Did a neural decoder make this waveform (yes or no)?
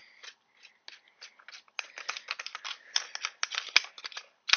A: no